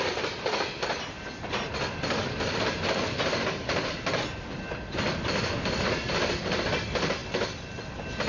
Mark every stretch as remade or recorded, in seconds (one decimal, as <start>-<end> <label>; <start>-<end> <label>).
0.0-8.3 recorded